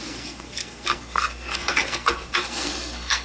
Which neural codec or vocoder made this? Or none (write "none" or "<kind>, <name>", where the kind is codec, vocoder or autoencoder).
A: codec, SNAC